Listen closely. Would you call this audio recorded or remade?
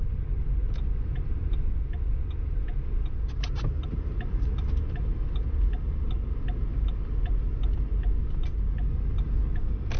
recorded